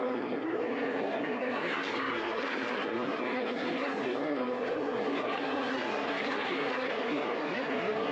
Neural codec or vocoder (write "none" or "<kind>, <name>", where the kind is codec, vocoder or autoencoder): codec, SNAC